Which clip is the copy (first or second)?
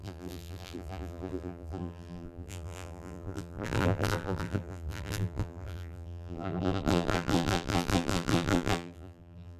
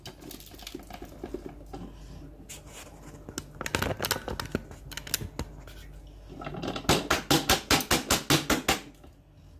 first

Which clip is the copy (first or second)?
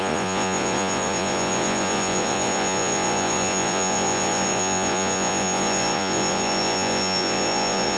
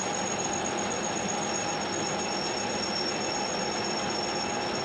first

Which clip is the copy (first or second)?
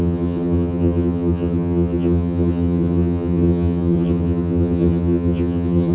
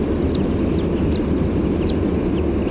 first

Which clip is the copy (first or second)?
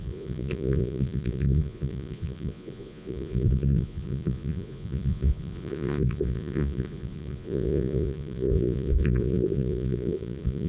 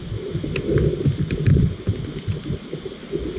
first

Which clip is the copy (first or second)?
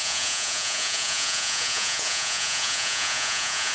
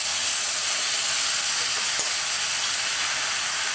first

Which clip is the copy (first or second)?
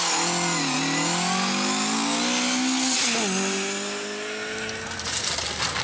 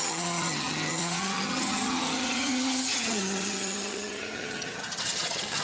second